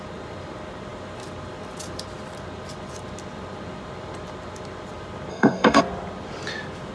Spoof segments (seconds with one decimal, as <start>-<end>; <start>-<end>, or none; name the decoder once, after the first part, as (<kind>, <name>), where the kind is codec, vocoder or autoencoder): 5.3-5.8 (codec, SNAC)